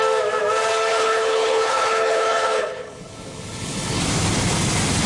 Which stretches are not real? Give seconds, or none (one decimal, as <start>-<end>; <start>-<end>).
0.9-4.0